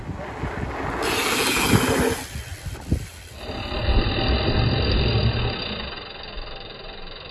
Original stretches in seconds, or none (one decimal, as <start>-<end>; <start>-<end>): 0.0-7.3